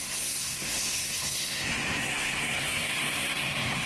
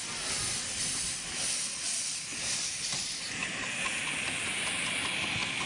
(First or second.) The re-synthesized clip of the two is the first